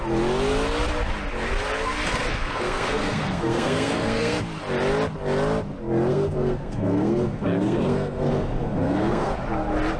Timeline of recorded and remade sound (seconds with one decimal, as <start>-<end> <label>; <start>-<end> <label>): 0.0-2.3 recorded; 2.3-4.4 remade; 4.4-6.1 recorded; 6.1-9.3 remade; 9.3-10.0 recorded